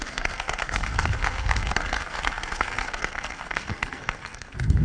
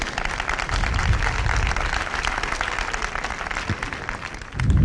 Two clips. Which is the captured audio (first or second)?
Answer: second